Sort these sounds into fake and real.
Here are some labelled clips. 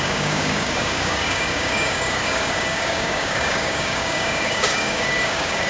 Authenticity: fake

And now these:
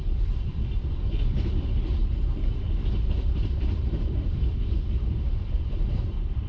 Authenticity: fake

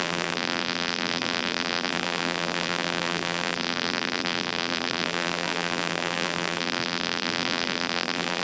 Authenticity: fake